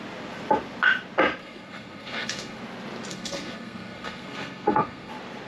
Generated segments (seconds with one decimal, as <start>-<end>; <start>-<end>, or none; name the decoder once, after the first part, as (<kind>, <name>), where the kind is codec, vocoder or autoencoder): 1.4-2.6 (codec, SNAC); 3.1-5.1